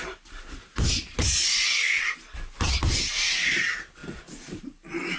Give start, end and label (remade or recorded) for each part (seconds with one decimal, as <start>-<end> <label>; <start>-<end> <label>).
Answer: 0.0-4.0 recorded; 4.0-4.6 remade; 4.6-5.2 recorded